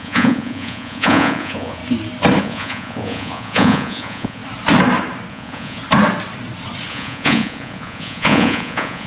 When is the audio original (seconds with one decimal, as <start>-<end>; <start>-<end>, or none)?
1.8-2.4; 4.4-5.3; 5.8-6.9